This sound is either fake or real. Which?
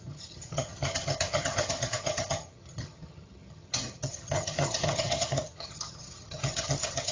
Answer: fake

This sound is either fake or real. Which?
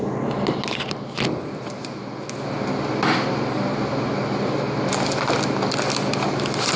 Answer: real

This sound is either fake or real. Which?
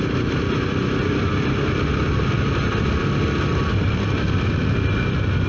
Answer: real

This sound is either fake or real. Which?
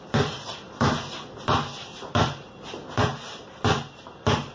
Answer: real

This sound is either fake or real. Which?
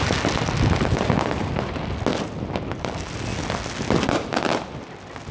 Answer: real